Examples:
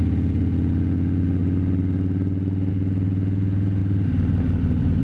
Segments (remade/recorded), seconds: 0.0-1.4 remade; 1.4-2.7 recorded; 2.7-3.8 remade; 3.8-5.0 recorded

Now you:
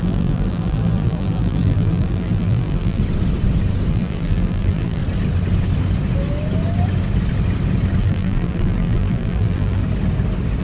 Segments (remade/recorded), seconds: 0.0-3.0 remade; 3.0-3.9 recorded; 3.9-5.0 remade; 5.0-8.0 recorded; 8.0-9.8 remade; 9.8-10.6 recorded